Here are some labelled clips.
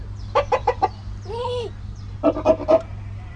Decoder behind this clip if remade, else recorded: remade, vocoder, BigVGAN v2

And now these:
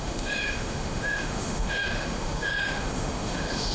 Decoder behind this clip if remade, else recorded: remade, autoencoder, DAC-VAE